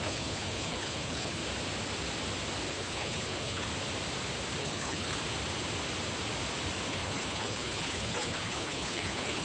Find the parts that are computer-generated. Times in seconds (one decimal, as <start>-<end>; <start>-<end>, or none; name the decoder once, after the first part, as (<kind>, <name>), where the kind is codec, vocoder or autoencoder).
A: 0.0-1.4 (codec, HILCodec); 2.7-3.7; 4.6-5.2; 6.9-9.4